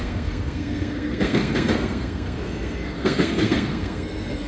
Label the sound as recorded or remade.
remade